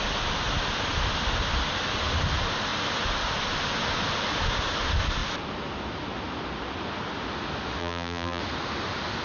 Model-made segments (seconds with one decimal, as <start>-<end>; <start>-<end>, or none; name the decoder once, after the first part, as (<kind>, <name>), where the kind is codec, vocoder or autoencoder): 7.8-8.4 (vocoder, BigVGAN v2)